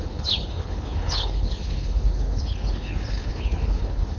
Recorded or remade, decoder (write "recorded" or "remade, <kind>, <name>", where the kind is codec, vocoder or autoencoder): remade, codec, HILCodec